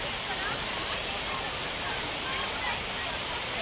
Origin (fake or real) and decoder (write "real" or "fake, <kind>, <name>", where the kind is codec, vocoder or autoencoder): real